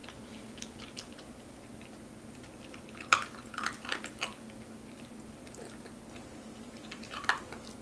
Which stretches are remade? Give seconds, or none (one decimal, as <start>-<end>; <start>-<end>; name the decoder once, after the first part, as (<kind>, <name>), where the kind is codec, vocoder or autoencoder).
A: none